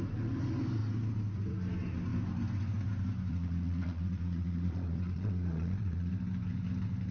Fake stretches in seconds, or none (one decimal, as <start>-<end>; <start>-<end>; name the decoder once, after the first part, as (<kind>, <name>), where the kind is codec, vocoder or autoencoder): 3.3-6.1 (vocoder, Vocos)

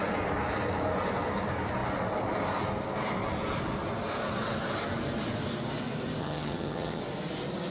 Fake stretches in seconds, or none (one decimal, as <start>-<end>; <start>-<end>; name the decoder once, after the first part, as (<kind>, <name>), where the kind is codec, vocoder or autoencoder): 6.2-7.0 (vocoder, HiFi-GAN)

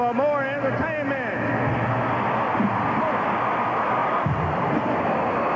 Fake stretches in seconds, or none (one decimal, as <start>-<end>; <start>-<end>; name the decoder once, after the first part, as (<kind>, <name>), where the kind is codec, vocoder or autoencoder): none

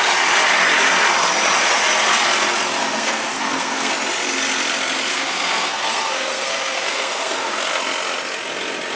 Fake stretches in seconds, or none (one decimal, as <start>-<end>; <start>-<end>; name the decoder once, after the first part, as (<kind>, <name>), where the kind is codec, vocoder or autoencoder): 2.8-3.9 (codec, SNAC); 5.1-7.7

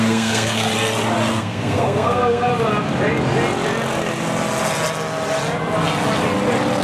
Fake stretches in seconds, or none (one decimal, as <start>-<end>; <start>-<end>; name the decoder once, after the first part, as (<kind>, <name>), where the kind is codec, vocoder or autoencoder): 0.0-0.7 (codec, SNAC); 1.3-2.5

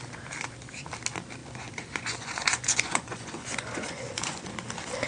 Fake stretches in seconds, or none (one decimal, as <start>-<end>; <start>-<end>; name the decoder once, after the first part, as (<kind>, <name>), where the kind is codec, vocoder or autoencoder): 1.4-4.5 (vocoder, Vocos)